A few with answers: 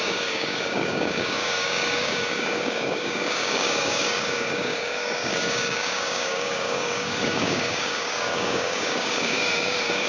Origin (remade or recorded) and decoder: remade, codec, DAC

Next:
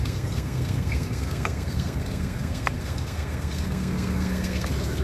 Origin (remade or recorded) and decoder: remade, codec, SNAC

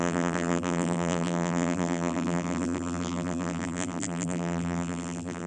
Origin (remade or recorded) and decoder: remade, vocoder, BigVGAN v2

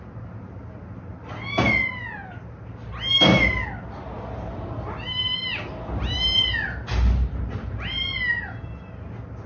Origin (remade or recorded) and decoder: recorded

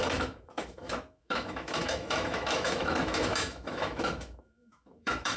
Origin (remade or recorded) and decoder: remade, autoencoder, DAC-VAE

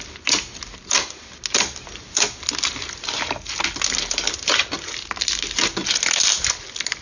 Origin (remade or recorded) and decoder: recorded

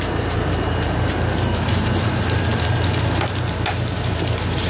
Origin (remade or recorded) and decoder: remade, vocoder, BigVGAN v2